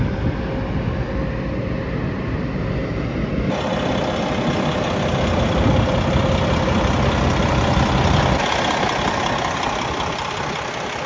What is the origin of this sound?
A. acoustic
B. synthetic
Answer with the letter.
A